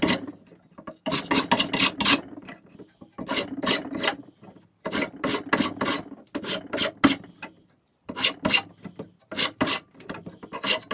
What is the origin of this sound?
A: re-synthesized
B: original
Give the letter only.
B